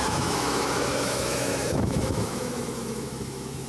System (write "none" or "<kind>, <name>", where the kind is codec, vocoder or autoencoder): autoencoder, DAC-VAE